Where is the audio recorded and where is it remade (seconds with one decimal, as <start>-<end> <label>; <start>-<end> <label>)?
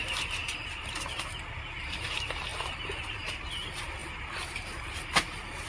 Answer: 0.0-0.4 recorded; 0.4-1.2 remade; 1.2-2.5 recorded; 2.5-3.2 remade; 3.2-4.0 recorded; 4.0-5.0 remade; 5.0-5.7 recorded